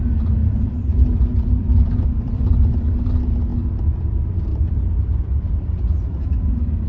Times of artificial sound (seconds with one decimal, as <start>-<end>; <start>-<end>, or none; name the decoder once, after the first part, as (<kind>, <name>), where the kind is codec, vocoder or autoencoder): 0.4-3.1 (vocoder, BigVGAN v2); 4.5-5.8